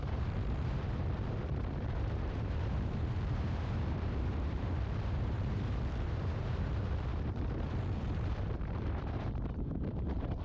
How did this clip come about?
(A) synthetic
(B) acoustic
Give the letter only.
A